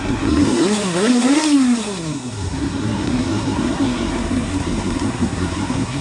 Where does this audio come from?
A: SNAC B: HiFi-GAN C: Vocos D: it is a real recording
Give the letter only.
A